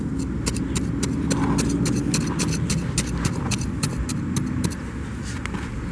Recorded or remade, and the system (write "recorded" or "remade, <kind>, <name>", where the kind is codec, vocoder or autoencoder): recorded